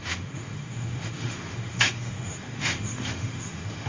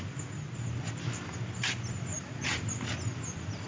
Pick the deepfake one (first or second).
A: first